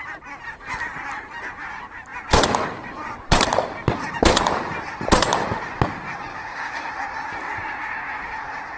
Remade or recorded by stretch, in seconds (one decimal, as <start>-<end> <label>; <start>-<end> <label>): 0.0-6.3 recorded; 6.3-6.9 remade; 6.9-8.8 recorded